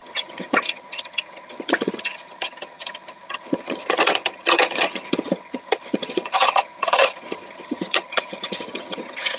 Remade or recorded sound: remade